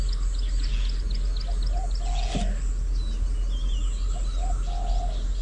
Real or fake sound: real